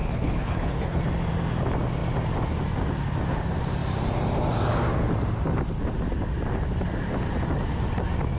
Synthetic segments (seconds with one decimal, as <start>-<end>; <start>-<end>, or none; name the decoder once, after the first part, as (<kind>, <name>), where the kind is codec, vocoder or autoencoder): 0.0-1.0 (codec, HILCodec)